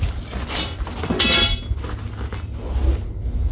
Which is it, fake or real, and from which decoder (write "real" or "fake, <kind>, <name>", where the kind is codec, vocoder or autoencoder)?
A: real